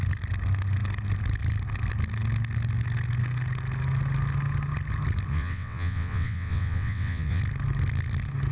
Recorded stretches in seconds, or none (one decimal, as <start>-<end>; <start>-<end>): 0.0-5.3; 7.4-8.5